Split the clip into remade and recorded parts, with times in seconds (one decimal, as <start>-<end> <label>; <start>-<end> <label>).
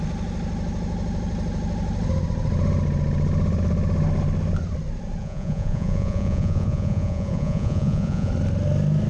0.0-5.2 recorded; 5.2-8.3 remade; 8.3-9.1 recorded